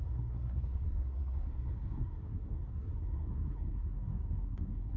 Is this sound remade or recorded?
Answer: remade